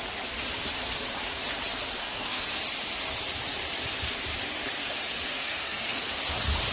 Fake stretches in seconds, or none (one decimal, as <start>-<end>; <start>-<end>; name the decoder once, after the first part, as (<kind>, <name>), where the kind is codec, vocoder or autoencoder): 2.0-2.6 (codec, SNAC); 4.8-6.1